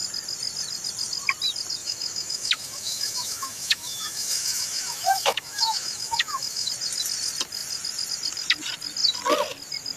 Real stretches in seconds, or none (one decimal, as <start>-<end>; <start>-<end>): 0.0-1.8; 6.7-10.0